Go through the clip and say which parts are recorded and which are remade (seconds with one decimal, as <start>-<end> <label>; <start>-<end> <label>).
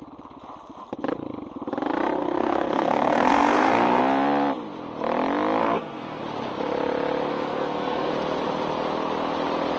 0.0-2.2 recorded; 2.2-4.0 remade; 4.0-5.6 recorded; 5.6-6.2 remade; 6.2-7.3 recorded; 7.3-8.1 remade; 8.1-9.8 recorded